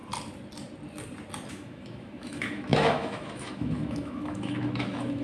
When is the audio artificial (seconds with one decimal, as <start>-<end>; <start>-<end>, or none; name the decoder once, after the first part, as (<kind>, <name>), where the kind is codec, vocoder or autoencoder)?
1.5-5.2 (autoencoder, DAC-VAE)